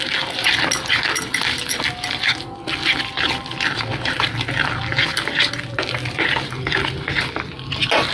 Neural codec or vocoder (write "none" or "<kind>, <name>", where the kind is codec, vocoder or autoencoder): none